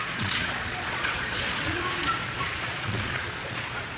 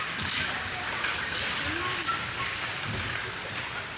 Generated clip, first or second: first